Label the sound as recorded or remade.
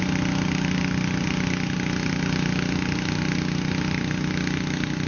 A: recorded